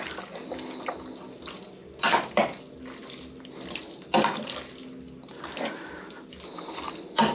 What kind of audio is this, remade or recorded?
recorded